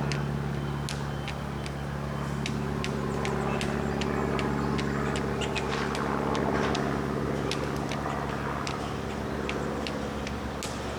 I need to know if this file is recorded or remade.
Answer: recorded